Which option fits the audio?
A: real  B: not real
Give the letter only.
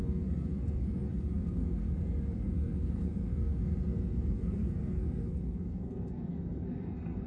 B